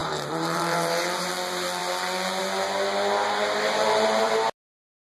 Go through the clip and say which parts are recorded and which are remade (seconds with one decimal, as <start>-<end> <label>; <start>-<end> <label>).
0.0-1.3 remade; 1.3-3.8 recorded; 3.8-4.3 remade; 4.3-5.0 recorded